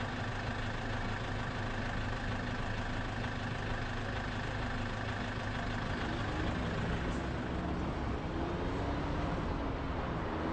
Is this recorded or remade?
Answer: recorded